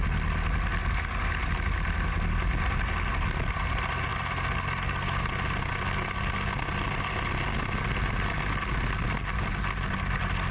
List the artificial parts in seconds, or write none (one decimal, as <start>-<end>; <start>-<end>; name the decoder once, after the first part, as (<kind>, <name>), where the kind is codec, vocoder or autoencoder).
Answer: none